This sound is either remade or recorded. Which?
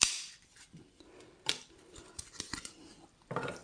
remade